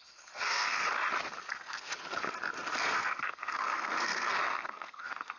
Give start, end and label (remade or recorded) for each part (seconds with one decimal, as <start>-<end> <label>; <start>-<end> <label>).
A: 0.0-0.8 remade; 0.8-1.5 recorded; 1.5-1.9 remade; 1.9-2.8 recorded; 2.8-5.4 remade